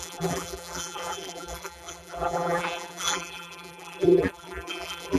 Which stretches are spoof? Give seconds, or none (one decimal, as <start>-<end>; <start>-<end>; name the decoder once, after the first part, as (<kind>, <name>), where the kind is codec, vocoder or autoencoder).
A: 0.0-5.2 (vocoder, BigVGAN v2)